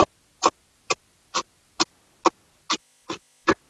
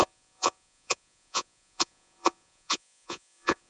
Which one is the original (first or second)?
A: first